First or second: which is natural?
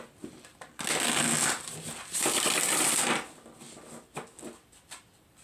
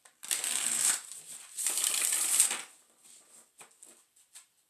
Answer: first